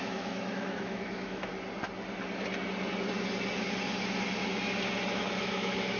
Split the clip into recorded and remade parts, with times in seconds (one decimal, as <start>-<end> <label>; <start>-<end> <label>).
0.0-1.5 remade; 1.5-5.1 recorded; 5.1-6.0 remade